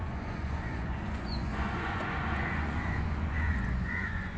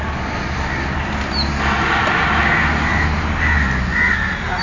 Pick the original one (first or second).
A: second